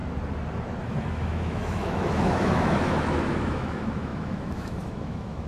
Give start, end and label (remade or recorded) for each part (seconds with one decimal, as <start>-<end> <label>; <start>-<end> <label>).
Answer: 0.0-1.0 recorded; 1.0-5.5 remade